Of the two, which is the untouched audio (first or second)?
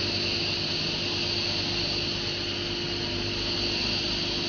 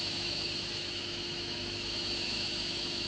first